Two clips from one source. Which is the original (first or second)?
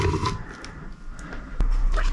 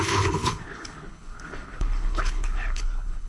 first